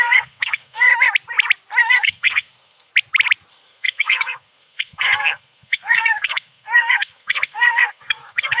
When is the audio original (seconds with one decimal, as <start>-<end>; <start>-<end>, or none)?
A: 0.9-1.8; 2.9-3.5